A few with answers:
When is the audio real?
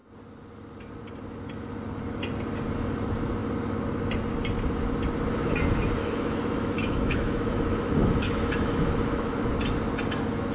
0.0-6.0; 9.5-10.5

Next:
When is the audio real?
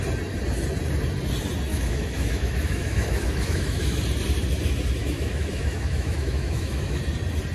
0.0-1.7; 4.0-5.0; 7.0-7.5